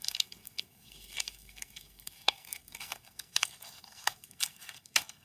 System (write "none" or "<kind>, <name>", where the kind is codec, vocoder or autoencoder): codec, SNAC